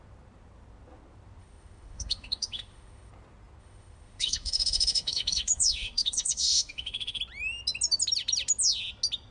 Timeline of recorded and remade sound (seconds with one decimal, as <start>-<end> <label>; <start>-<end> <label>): 0.0-1.4 recorded; 1.4-3.1 remade; 3.1-3.6 recorded; 3.6-7.2 remade; 7.2-9.3 recorded